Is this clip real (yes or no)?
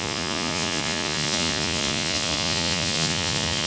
no